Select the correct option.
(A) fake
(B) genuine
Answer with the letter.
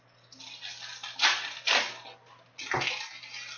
B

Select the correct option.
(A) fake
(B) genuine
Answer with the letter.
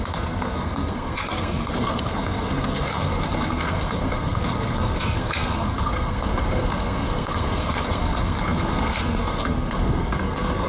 A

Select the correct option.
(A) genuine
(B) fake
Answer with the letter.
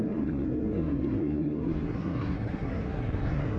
B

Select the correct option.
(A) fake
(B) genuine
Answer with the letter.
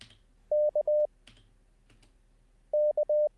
B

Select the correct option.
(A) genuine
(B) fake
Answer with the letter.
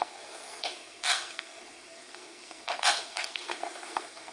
B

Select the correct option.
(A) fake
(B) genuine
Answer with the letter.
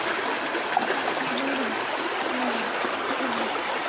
B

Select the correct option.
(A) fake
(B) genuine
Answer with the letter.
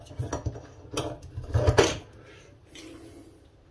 B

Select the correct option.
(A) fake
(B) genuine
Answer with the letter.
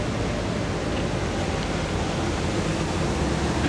B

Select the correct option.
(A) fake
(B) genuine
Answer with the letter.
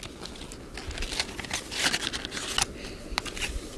B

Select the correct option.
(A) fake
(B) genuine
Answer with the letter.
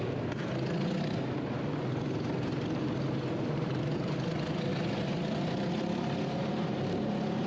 B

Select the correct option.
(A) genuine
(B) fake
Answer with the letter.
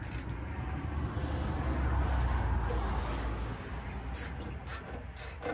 A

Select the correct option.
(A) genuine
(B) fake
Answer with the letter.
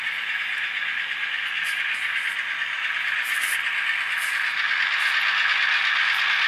A